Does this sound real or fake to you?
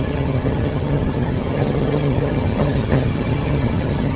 fake